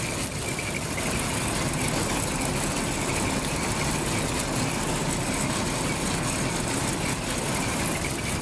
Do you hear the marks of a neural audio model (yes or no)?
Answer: no